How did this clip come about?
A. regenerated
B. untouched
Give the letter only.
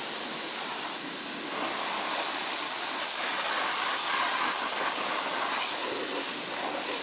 B